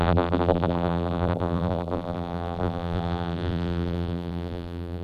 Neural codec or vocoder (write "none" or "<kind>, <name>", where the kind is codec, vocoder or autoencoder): vocoder, BigVGAN v2